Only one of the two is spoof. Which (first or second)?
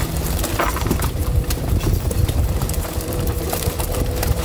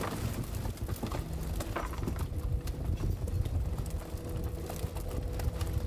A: first